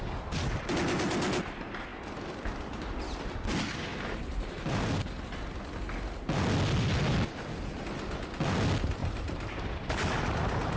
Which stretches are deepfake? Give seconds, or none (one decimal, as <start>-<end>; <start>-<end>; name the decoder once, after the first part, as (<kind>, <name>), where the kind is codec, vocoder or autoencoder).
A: 3.9-5.0 (vocoder, BigVGAN v2); 9.0-9.7